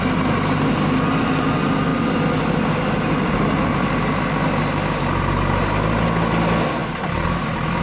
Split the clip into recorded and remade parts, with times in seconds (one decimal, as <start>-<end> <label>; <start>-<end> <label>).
0.0-1.9 recorded; 1.9-5.6 remade; 5.6-6.8 recorded; 6.8-7.8 remade